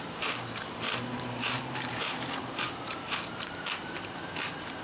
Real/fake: fake